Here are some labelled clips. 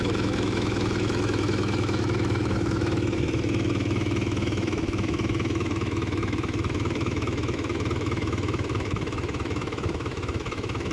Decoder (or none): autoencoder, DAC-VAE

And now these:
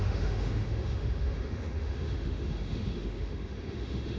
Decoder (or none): autoencoder, DAC-VAE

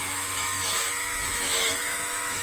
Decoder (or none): autoencoder, DAC-VAE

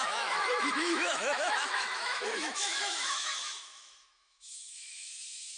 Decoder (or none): autoencoder, DAC-VAE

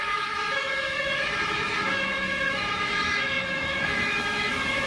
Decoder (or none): autoencoder, DAC-VAE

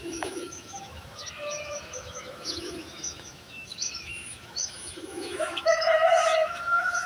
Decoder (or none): autoencoder, DAC-VAE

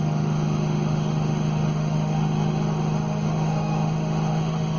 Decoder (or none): autoencoder, DAC-VAE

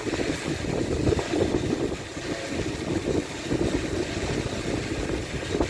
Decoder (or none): none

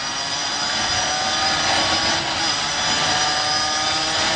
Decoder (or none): none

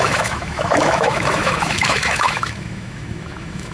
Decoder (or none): autoencoder, DAC-VAE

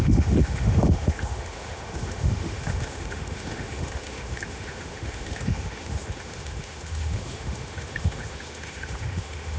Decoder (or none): autoencoder, DAC-VAE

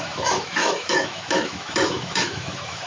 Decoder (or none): autoencoder, DAC-VAE